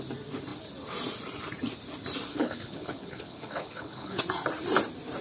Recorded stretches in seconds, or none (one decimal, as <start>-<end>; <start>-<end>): 0.0-2.3; 4.2-5.2